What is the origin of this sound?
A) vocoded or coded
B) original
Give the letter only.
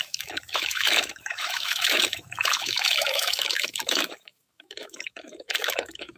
A